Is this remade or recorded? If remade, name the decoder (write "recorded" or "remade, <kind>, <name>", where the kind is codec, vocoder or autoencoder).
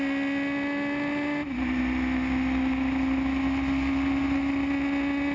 recorded